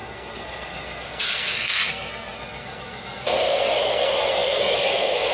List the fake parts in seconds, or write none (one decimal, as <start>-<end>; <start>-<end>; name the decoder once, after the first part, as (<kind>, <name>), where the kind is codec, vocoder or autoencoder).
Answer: 0.0-5.3 (codec, SNAC)